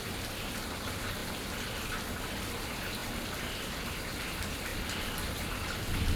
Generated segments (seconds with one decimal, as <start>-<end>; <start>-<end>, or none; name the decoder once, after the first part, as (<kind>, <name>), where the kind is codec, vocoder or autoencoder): none